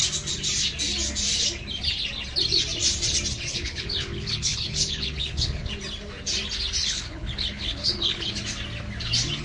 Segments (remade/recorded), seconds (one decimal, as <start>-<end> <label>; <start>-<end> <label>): 0.0-3.5 recorded; 3.5-5.7 remade; 5.7-6.8 recorded; 6.8-8.4 remade; 8.4-9.4 recorded